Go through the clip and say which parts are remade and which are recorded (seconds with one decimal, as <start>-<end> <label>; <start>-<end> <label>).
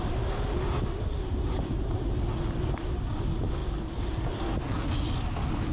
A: 0.0-5.7 recorded